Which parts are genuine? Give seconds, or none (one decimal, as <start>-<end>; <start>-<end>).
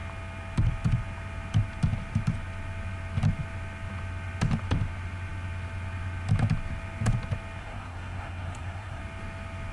0.0-7.6; 9.0-9.7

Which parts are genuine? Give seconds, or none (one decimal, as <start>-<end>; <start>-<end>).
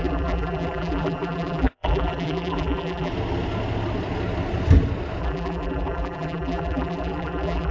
3.1-5.2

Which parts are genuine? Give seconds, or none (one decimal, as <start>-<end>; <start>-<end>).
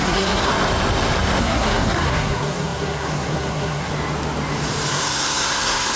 0.5-1.4; 3.9-4.9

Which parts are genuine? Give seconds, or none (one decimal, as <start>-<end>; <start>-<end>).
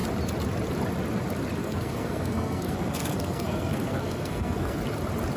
0.0-1.6; 4.8-5.4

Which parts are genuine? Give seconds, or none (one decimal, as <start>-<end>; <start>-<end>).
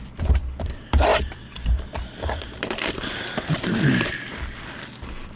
none